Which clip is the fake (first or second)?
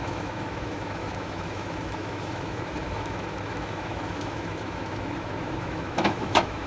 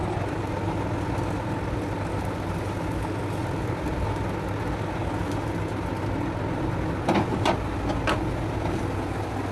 first